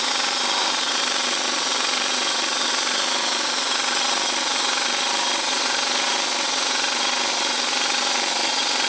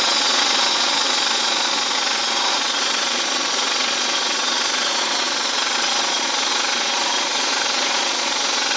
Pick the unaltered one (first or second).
first